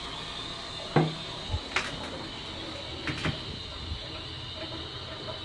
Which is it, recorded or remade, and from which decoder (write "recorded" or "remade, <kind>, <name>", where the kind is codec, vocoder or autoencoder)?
recorded